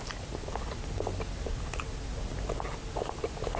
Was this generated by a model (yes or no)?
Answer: no